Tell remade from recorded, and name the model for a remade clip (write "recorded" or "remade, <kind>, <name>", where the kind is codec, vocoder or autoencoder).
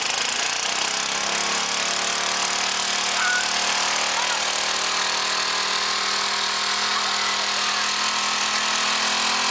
recorded